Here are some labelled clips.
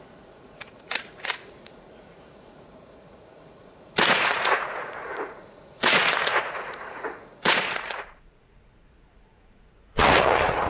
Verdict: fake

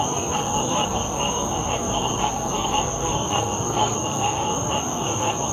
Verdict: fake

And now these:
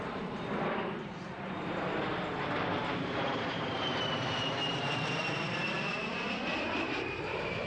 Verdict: fake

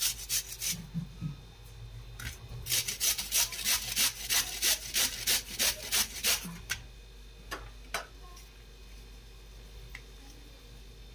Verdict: real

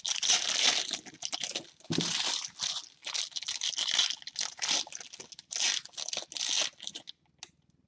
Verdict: real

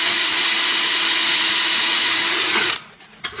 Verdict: fake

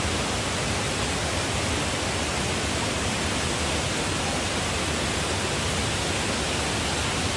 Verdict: real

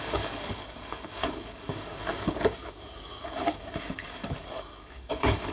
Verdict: fake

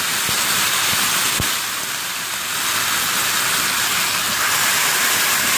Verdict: real